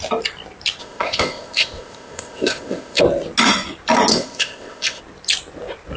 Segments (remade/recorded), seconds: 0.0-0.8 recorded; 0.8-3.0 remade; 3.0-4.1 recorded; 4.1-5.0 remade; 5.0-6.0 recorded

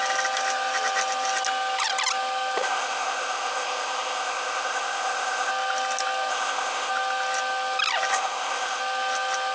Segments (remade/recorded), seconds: 0.0-2.6 recorded; 2.6-5.5 remade; 5.5-6.3 recorded; 6.3-6.9 remade; 6.9-8.1 recorded; 8.1-8.8 remade; 8.8-9.5 recorded

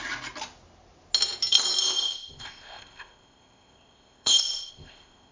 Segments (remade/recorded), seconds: 0.0-1.8 recorded; 1.8-5.3 remade

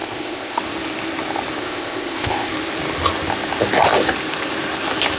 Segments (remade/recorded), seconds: 0.0-0.6 remade; 0.6-1.6 recorded; 1.6-2.5 remade; 2.5-5.2 recorded

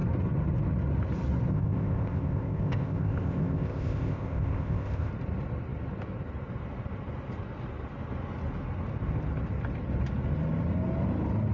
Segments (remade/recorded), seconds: 0.0-1.5 recorded; 1.5-5.1 remade; 5.1-11.5 recorded

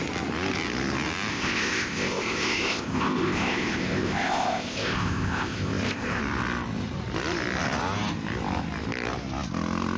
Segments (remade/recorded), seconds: 0.0-1.3 recorded; 1.3-6.2 remade; 6.2-10.0 recorded